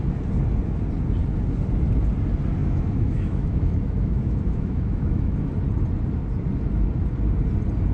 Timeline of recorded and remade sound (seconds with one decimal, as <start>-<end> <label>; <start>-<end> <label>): 0.0-2.6 recorded; 2.6-5.5 remade; 5.5-7.9 recorded